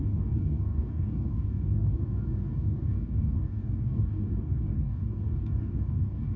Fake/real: fake